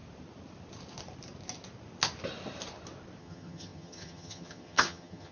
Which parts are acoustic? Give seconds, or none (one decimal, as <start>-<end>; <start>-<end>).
0.0-3.2